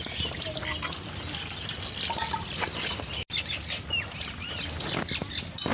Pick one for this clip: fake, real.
real